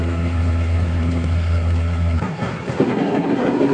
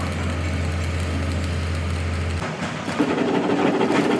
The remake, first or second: first